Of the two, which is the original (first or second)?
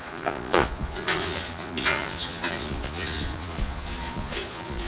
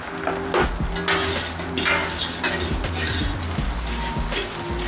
second